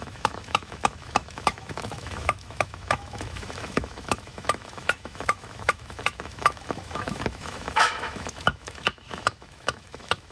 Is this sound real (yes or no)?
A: no